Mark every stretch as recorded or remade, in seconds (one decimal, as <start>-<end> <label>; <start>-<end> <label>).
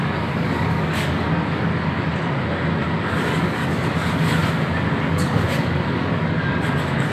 0.0-2.1 remade; 2.1-3.2 recorded; 3.2-4.4 remade; 4.4-5.0 recorded; 5.0-7.1 remade